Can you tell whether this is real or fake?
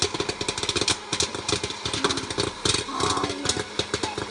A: real